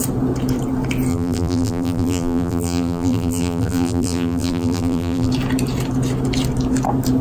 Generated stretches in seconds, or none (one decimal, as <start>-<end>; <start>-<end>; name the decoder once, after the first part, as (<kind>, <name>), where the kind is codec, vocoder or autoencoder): 1.1-5.3 (vocoder, BigVGAN v2)